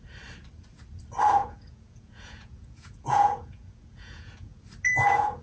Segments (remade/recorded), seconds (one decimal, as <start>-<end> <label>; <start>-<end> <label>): 0.0-1.4 recorded; 1.4-4.6 remade; 4.6-5.4 recorded